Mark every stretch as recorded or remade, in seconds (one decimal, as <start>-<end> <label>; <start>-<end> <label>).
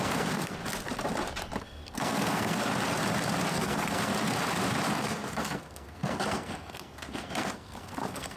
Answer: 0.0-0.6 remade; 0.6-1.6 recorded; 1.6-2.7 remade; 2.7-3.5 recorded; 3.5-4.1 remade; 4.1-4.9 recorded; 4.9-8.4 remade